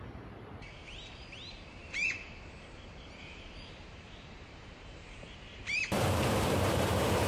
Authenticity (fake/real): fake